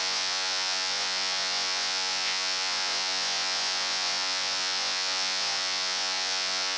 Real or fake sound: fake